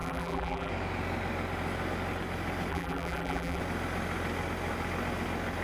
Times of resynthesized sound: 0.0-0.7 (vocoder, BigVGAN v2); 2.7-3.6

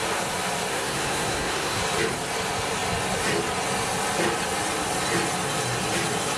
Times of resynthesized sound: 0.7-1.8 (codec, SNAC)

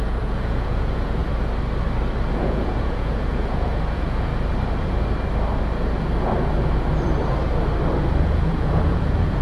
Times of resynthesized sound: 0.0-1.2 (vocoder, Vocos); 2.3-4.3; 8.2-9.4

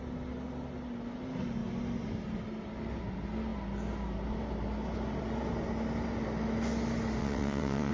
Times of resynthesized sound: 7.2-7.9 (vocoder, WaveNeXt)

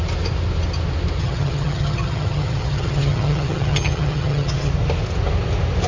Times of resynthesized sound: 1.2-4.7 (vocoder, HiFi-GAN)